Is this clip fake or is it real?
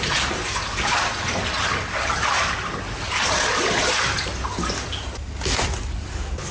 real